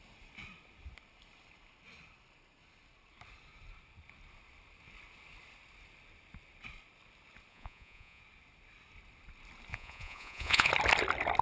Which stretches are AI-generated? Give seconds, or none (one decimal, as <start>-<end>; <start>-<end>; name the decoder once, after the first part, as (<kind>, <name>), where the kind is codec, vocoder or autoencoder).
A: 7.5-8.2 (vocoder, Vocos); 9.7-10.7